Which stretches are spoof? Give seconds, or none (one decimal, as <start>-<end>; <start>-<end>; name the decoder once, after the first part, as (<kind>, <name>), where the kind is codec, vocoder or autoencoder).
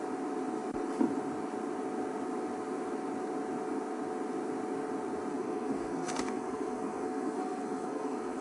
5.3-8.4 (codec, SNAC)